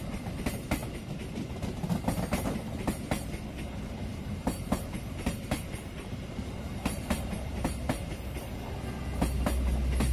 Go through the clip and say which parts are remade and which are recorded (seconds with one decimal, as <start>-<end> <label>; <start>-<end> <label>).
0.0-4.1 recorded; 4.1-8.5 remade; 8.5-10.1 recorded

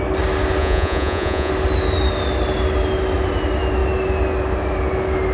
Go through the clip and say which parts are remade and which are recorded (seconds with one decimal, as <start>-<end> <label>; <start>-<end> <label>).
0.0-0.6 recorded; 0.6-1.5 remade; 1.5-5.3 recorded

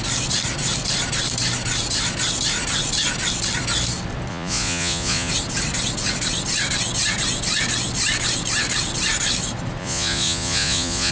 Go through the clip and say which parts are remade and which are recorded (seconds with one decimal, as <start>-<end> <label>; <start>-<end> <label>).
0.0-4.3 recorded; 4.3-5.3 remade; 5.3-9.8 recorded; 9.8-11.1 remade

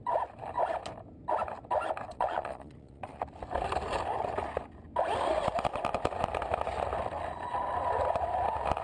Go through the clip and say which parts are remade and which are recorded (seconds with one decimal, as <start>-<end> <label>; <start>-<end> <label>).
0.0-2.1 recorded; 2.1-3.2 remade; 3.2-8.8 recorded

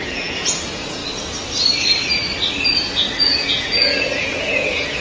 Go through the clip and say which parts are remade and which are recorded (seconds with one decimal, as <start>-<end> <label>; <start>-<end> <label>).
0.0-1.0 remade; 1.0-3.2 recorded; 3.2-5.0 remade

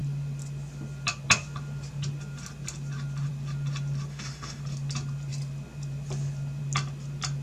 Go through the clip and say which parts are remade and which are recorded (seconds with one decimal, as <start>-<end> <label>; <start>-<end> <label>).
0.0-4.1 recorded; 4.1-4.6 remade; 4.6-7.4 recorded

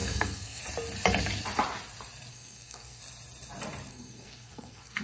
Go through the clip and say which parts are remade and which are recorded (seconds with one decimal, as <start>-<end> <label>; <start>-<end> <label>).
0.0-0.6 remade; 0.6-2.3 recorded; 2.3-3.0 remade; 3.0-3.9 recorded; 3.9-5.0 remade

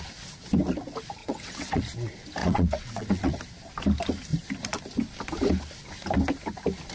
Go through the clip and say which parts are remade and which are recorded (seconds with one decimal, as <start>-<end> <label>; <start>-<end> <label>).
0.0-1.2 recorded; 1.2-1.8 remade; 1.8-2.4 recorded; 2.4-3.4 remade; 3.4-6.9 recorded